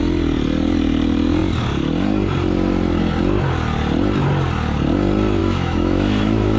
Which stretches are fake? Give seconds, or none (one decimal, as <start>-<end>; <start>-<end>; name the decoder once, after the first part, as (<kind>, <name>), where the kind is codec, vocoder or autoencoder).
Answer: 5.4-6.6 (autoencoder, DAC-VAE)